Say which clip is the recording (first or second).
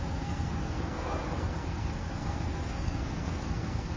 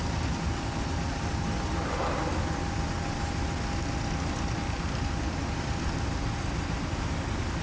second